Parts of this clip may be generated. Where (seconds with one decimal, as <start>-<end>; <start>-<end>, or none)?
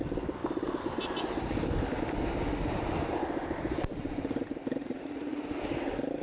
4.8-5.4